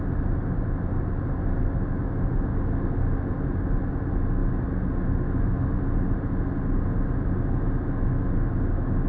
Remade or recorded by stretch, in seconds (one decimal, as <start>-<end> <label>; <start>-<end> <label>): 0.0-9.1 recorded